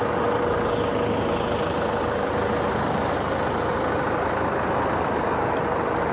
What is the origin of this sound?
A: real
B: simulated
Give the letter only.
A